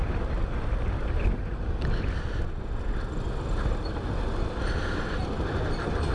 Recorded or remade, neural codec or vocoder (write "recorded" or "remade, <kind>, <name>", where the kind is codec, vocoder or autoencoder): recorded